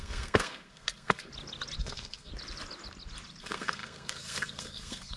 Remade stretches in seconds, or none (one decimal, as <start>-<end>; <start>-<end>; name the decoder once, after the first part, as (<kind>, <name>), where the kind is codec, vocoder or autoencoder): 0.0-1.3 (codec, SNAC); 1.8-2.3; 3.4-5.2